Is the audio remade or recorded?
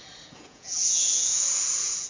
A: remade